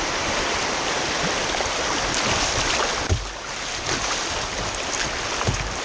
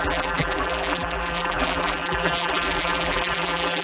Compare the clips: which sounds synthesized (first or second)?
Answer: second